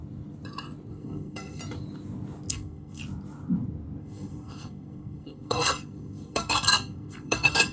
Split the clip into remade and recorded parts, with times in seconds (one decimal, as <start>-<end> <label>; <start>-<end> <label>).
0.0-0.9 recorded; 0.9-1.6 remade; 1.6-2.5 recorded; 2.5-3.0 remade; 3.0-4.0 recorded; 4.0-7.7 remade